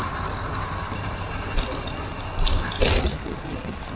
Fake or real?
real